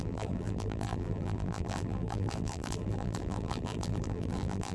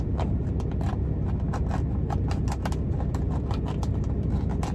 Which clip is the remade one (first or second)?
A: first